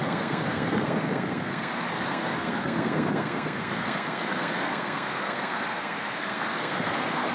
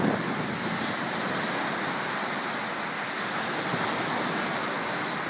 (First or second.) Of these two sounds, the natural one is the second